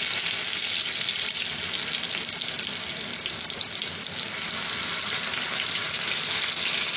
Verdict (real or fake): real